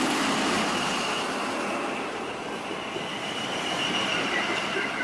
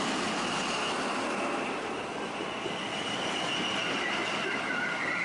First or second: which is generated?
first